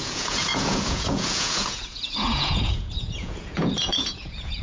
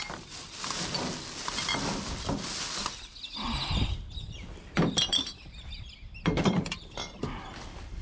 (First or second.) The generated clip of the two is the first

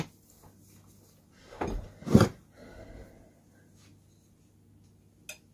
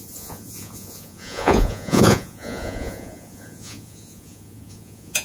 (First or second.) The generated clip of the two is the second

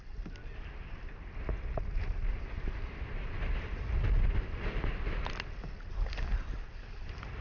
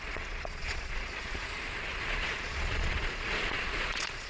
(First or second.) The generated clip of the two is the second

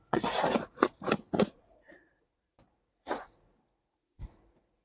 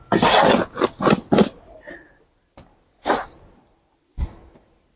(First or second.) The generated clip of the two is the first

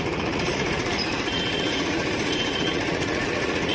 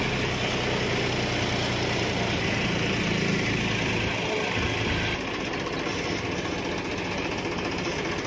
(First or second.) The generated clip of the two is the first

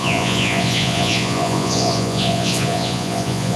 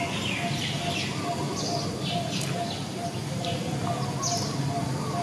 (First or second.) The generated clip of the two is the first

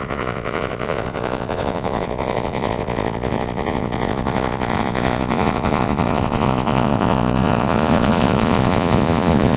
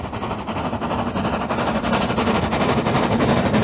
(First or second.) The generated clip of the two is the first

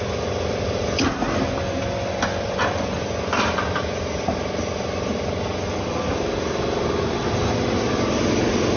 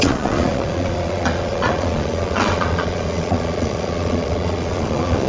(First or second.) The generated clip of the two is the second